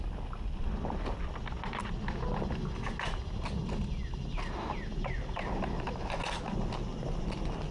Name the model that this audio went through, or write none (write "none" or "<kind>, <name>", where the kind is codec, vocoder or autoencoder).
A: none